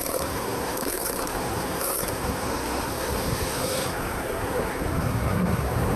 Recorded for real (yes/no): no